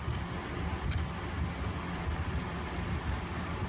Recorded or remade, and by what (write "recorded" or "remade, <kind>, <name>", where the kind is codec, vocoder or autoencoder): recorded